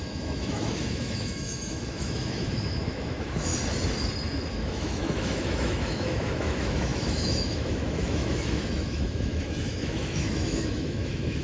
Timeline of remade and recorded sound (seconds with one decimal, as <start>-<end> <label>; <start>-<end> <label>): 0.0-3.5 remade; 3.5-4.5 recorded; 4.5-11.4 remade

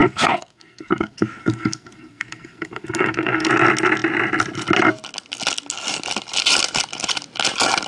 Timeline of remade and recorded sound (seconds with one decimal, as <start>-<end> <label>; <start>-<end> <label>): 0.0-3.5 remade; 3.5-7.9 recorded

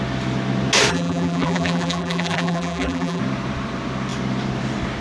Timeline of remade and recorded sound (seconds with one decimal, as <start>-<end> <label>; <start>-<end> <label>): 0.0-0.9 recorded; 0.9-3.2 remade; 3.2-5.0 recorded

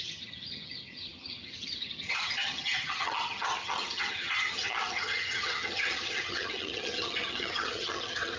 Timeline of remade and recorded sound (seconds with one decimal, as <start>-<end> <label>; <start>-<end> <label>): 0.0-8.4 remade